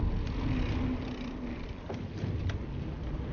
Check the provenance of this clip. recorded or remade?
recorded